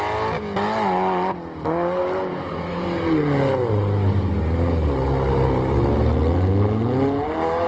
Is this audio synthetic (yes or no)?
no